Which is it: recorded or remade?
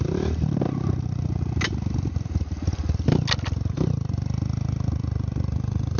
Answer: recorded